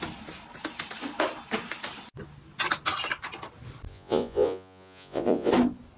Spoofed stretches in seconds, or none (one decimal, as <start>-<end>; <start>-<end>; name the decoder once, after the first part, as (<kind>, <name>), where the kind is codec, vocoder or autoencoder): 3.9-5.5 (vocoder, Vocos)